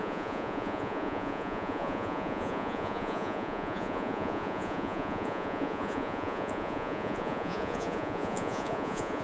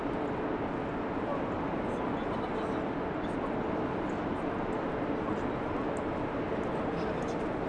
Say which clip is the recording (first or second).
second